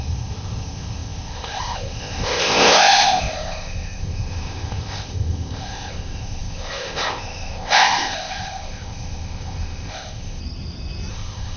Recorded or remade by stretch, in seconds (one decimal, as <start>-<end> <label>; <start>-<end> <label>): 0.0-10.4 remade; 10.4-11.1 recorded; 11.1-11.6 remade